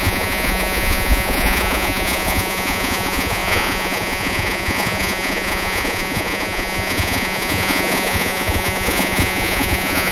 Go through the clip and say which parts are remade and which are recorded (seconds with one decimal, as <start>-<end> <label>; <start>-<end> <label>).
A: 0.0-10.1 remade